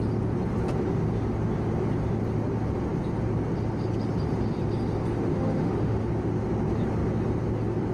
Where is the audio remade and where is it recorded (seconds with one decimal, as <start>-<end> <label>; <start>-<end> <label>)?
0.0-5.3 recorded; 5.3-6.1 remade; 6.1-7.9 recorded